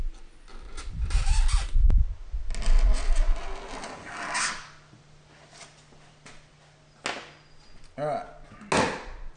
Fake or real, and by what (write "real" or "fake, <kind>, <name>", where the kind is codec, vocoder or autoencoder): real